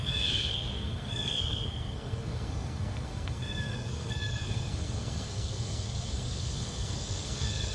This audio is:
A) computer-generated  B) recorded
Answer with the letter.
A